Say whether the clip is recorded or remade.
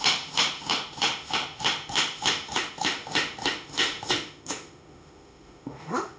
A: remade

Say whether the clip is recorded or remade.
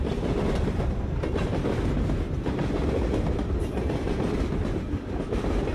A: remade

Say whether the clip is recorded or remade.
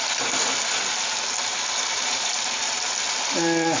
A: remade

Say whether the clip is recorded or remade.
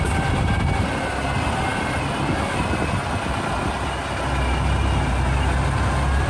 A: recorded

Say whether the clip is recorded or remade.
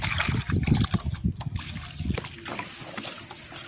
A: remade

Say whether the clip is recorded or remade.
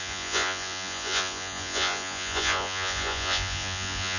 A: remade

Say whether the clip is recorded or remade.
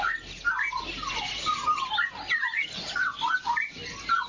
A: recorded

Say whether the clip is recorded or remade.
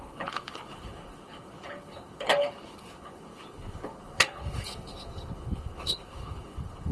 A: remade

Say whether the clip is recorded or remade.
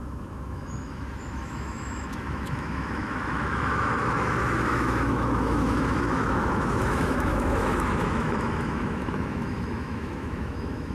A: remade